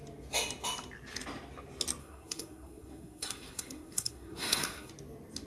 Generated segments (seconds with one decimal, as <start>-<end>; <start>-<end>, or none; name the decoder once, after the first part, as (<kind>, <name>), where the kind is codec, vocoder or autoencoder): 2.0-4.9 (codec, SNAC)